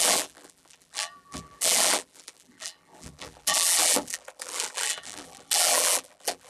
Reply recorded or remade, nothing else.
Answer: remade